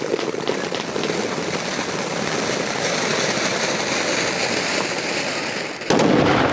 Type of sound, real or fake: real